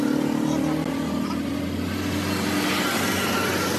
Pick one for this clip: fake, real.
real